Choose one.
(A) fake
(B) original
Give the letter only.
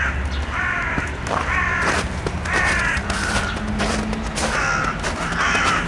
A